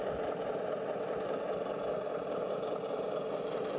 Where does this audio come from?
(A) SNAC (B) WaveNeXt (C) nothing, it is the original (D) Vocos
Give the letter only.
C